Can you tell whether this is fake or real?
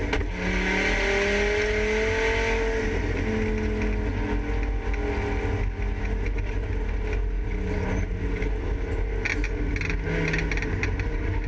real